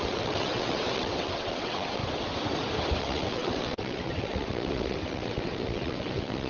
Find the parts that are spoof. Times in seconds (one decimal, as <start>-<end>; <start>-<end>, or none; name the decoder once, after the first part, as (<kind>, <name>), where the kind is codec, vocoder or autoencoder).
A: 0.0-2.0 (vocoder, WaveNeXt); 3.0-6.5